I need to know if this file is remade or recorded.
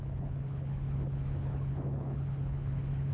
remade